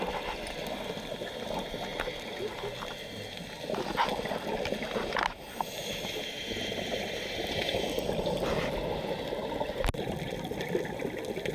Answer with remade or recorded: recorded